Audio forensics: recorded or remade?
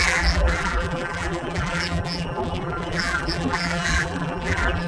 remade